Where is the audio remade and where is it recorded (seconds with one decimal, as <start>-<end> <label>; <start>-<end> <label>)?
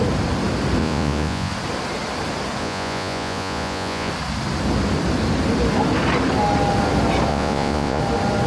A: 0.0-0.8 recorded; 0.8-1.5 remade; 1.5-2.6 recorded; 2.6-4.1 remade; 4.1-7.3 recorded; 7.3-8.0 remade; 8.0-8.5 recorded